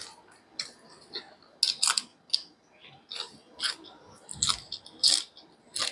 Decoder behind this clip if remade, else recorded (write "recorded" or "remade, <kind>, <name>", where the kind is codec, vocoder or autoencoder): recorded